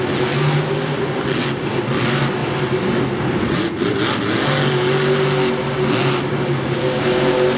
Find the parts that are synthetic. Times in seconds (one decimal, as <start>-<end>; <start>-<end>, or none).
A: none